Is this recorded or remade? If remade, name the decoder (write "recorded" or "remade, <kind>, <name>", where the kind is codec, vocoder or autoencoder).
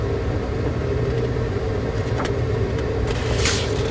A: remade, vocoder, BigVGAN v2